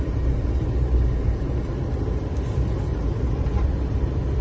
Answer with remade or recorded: recorded